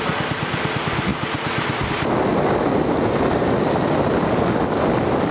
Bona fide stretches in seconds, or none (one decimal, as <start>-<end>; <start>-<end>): 0.0-5.3